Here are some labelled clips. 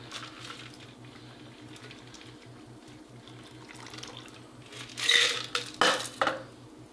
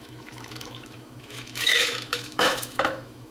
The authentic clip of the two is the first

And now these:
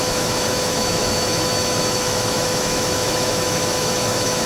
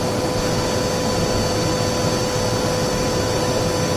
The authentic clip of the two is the second